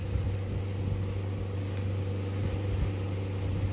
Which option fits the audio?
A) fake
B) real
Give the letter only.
B